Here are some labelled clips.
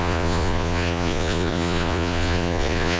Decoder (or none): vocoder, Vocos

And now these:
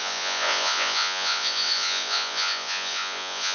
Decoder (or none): vocoder, Vocos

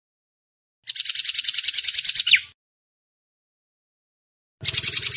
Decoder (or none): none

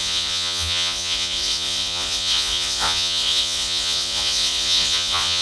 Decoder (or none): vocoder, Vocos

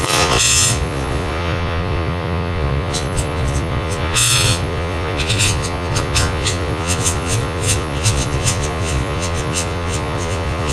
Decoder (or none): vocoder, Vocos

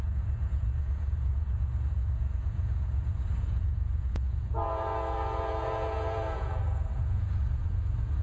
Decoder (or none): vocoder, Vocos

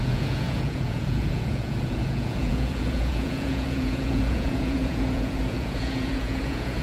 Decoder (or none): vocoder, Vocos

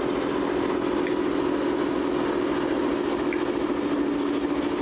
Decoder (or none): none